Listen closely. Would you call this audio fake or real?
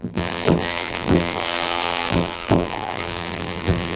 fake